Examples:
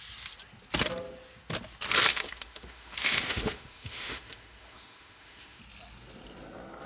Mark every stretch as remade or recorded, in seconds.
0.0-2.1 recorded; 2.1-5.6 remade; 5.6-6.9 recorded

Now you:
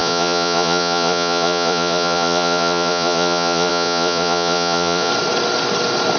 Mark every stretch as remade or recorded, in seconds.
0.0-5.1 remade; 5.1-6.2 recorded

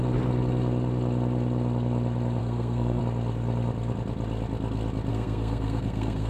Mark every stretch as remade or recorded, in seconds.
0.0-2.4 recorded; 2.4-3.0 remade; 3.0-5.1 recorded; 5.1-6.3 remade

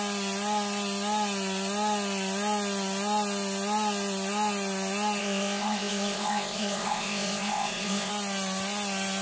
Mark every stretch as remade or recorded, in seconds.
0.0-5.2 recorded; 5.2-8.1 remade; 8.1-9.2 recorded

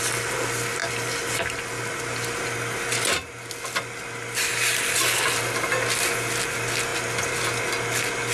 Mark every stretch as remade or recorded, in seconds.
0.0-8.3 recorded

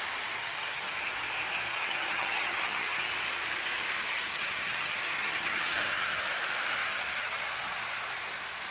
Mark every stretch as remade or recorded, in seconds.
0.0-0.4 recorded; 0.4-1.0 remade; 1.0-1.7 recorded; 1.7-3.0 remade; 3.0-4.3 recorded; 4.3-6.2 remade; 6.2-6.8 recorded; 6.8-7.4 remade; 7.4-8.7 recorded